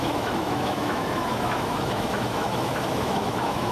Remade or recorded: remade